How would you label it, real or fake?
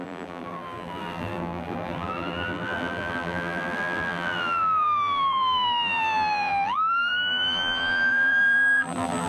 fake